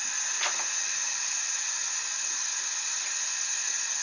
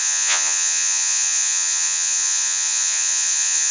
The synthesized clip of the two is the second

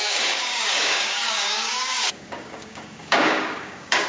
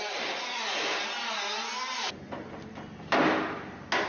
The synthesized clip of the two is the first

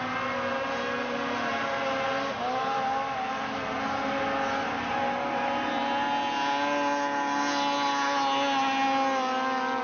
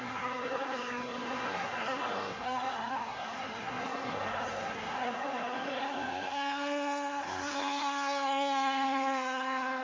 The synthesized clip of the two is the second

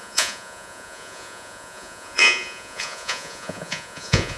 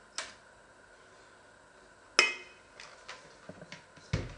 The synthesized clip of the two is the first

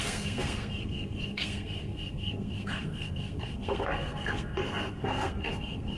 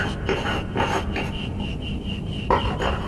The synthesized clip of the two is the first